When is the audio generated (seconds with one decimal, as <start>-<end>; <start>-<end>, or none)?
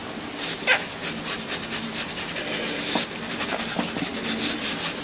none